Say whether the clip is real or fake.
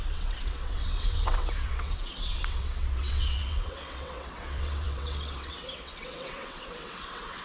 fake